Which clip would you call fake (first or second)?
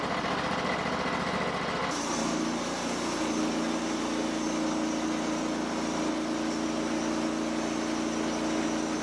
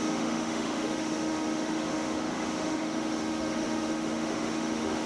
second